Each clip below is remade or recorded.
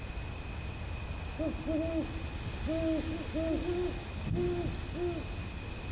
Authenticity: recorded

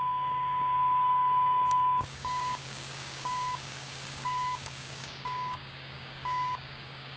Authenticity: remade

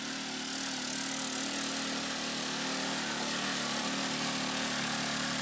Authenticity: recorded